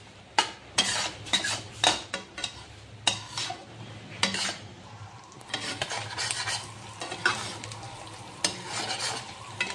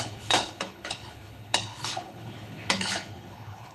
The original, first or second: first